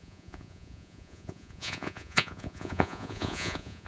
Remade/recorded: remade